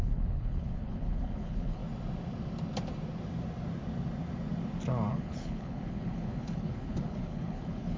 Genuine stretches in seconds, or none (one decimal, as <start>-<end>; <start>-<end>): 1.8-5.1